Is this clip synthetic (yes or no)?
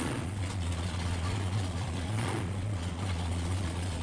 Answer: yes